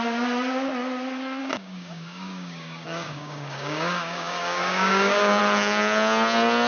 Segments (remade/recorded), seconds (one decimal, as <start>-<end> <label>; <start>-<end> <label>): 0.0-1.4 recorded; 1.4-5.4 remade; 5.4-6.7 recorded